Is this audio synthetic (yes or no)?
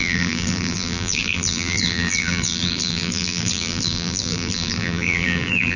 yes